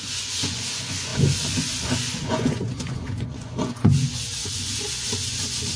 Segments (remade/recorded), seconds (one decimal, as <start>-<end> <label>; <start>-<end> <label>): 0.0-5.8 remade